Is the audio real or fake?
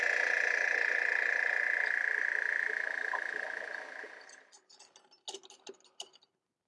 real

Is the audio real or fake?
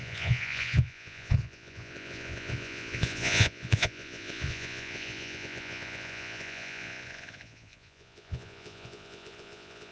fake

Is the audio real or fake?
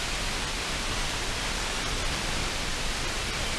real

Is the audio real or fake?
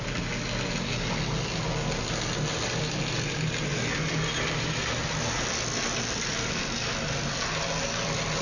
real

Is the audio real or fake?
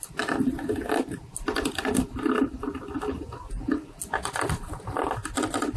real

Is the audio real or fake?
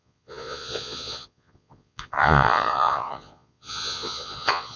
fake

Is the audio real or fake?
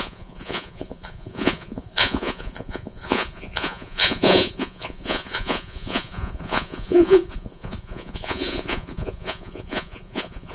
fake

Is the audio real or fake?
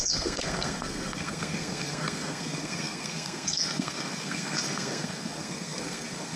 fake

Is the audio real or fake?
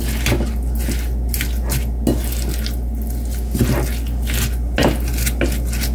real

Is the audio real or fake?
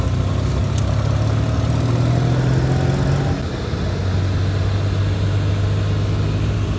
real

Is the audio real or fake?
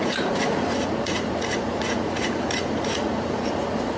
fake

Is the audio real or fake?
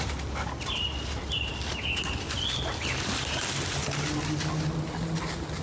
real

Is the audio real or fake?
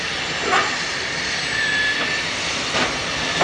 real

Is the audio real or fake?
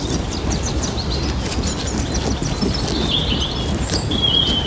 real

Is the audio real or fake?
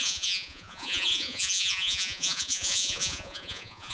fake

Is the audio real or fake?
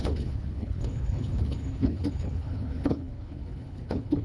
fake